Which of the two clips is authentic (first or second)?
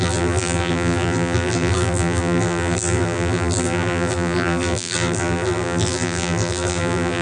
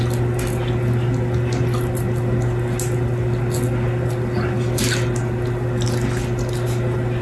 second